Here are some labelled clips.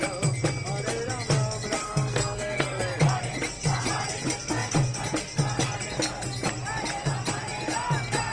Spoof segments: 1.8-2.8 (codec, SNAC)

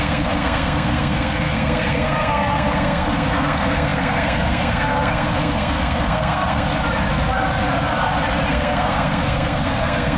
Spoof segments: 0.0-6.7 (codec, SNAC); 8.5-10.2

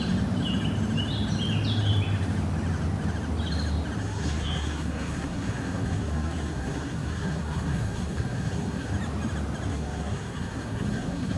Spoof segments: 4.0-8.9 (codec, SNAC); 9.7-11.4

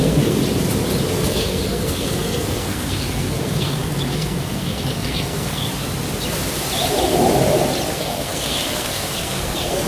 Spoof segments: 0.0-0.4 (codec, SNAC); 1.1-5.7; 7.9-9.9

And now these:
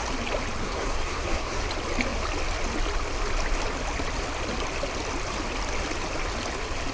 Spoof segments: 0.6-1.6 (codec, SNAC)

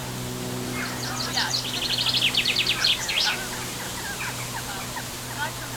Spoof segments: none

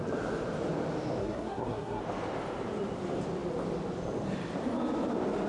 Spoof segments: 1.2-2.0 (codec, SNAC)

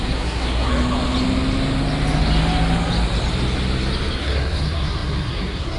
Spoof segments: 0.0-0.7 (codec, SNAC); 4.2-5.8